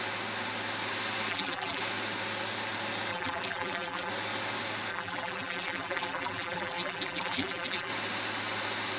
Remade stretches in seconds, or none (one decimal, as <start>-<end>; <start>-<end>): 1.3-1.8; 3.1-4.1; 4.9-7.9